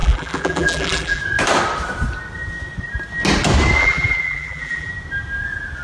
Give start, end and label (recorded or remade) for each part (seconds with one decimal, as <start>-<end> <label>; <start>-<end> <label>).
0.0-1.2 remade; 1.2-3.8 recorded; 3.8-4.9 remade; 4.9-5.8 recorded

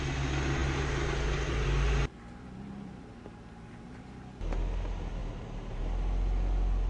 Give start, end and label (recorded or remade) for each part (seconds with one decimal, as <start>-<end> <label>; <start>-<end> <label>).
0.0-0.6 recorded; 0.6-4.0 remade; 4.0-5.2 recorded; 5.2-5.8 remade; 5.8-6.9 recorded

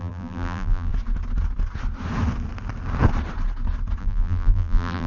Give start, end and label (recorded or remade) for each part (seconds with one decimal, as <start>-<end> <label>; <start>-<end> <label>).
0.0-0.9 remade; 0.9-4.0 recorded; 4.0-5.1 remade

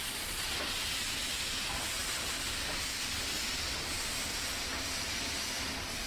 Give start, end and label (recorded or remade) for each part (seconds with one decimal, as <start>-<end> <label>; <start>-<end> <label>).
0.0-2.0 remade; 2.0-6.1 recorded

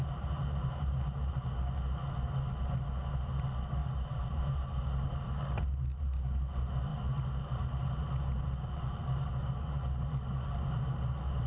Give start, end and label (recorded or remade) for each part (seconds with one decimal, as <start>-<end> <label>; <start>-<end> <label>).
0.0-1.3 remade; 1.3-3.8 recorded; 3.8-4.8 remade; 4.8-11.5 recorded